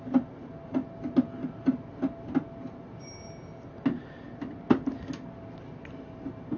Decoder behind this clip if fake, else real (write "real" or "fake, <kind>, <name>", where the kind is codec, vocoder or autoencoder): real